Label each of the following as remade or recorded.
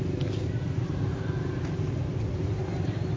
recorded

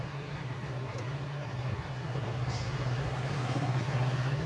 remade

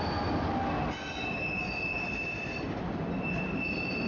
recorded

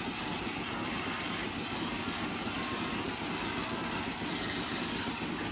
recorded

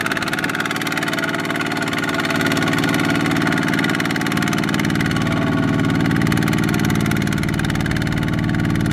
recorded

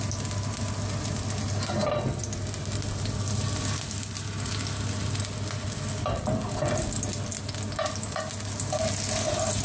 recorded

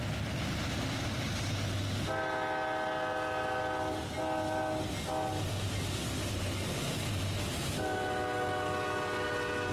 recorded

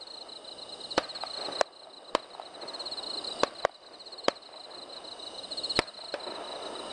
recorded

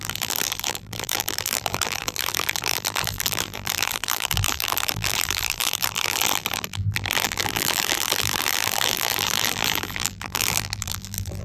remade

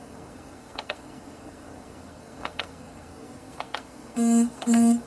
remade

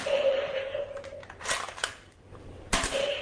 remade